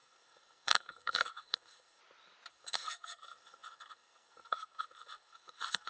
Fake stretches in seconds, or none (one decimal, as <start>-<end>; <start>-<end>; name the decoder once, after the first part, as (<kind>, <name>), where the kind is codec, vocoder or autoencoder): 0.0-2.0 (codec, SNAC); 2.5-5.9